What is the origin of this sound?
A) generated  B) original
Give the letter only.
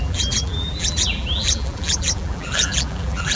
A